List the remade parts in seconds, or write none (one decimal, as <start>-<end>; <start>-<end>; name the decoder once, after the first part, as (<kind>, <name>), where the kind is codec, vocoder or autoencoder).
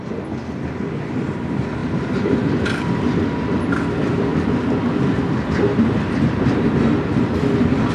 1.8-2.5 (vocoder, BigVGAN v2)